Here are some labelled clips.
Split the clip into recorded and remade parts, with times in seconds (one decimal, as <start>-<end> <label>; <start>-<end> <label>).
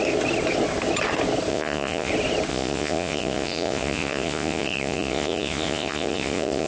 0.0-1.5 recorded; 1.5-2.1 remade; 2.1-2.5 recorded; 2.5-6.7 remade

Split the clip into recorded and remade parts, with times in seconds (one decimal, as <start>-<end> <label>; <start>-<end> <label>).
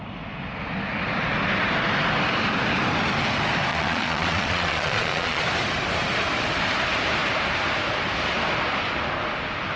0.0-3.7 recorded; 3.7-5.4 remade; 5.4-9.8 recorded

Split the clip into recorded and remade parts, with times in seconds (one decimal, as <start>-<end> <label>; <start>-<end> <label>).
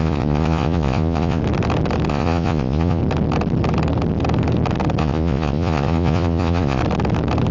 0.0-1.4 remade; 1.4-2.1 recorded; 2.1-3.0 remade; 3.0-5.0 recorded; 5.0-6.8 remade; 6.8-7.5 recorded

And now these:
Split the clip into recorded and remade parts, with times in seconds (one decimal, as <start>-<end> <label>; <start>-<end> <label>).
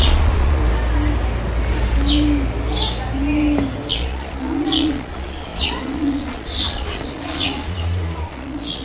0.0-0.6 remade; 0.6-3.9 recorded; 3.9-8.8 remade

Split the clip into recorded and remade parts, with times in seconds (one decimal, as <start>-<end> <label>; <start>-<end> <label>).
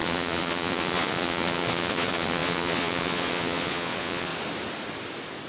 0.0-4.3 remade; 4.3-5.5 recorded